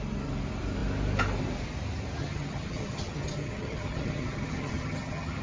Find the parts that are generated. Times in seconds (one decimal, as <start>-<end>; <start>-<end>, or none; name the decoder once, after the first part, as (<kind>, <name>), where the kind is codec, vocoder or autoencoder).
2.2-5.4 (vocoder, HiFi-GAN)